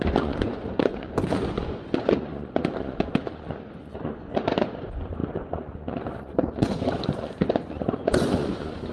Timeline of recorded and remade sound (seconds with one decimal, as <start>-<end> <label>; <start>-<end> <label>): 0.0-8.9 remade